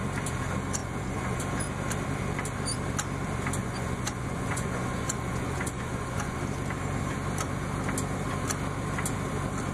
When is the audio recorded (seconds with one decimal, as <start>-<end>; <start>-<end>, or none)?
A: 0.0-0.8; 1.4-3.6; 6.4-9.7